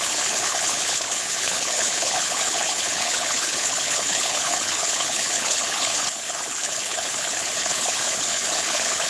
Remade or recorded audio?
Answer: remade